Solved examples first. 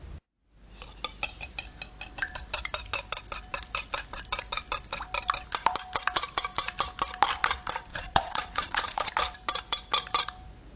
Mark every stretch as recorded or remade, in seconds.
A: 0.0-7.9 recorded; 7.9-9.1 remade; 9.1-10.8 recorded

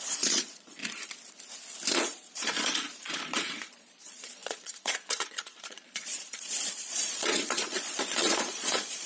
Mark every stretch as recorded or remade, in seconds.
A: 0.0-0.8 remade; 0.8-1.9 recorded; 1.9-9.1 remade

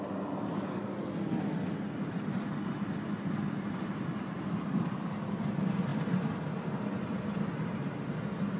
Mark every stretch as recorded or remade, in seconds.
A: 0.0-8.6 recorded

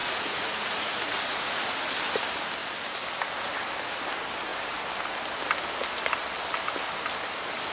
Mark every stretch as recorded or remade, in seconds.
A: 0.0-1.8 remade; 1.8-7.7 recorded